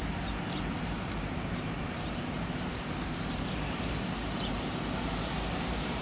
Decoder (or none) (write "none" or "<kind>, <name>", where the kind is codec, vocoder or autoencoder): vocoder, BigVGAN v2